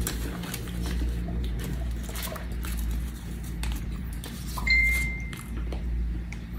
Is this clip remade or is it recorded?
remade